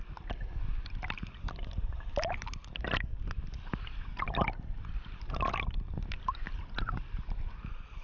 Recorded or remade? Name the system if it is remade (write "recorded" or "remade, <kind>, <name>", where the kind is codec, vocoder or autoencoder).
recorded